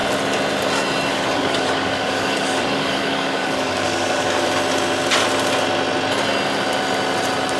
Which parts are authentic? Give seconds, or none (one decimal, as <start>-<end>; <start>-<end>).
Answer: 0.0-1.1; 4.5-7.6